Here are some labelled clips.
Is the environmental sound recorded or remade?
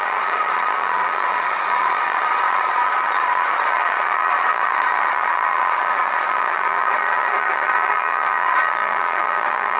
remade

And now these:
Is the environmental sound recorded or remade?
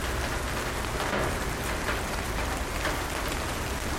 recorded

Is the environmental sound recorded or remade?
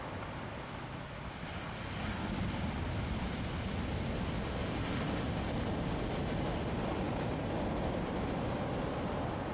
recorded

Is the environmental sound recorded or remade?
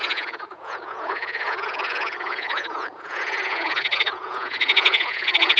remade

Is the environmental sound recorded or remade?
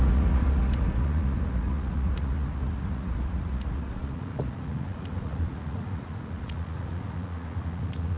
remade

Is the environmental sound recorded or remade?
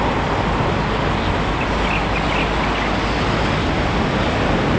recorded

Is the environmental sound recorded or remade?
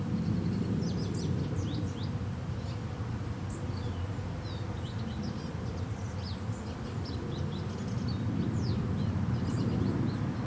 recorded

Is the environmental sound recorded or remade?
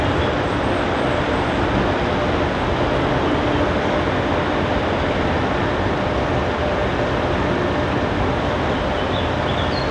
recorded